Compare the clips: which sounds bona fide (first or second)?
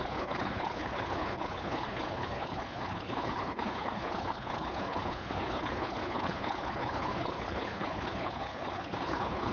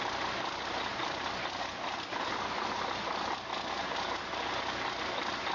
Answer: second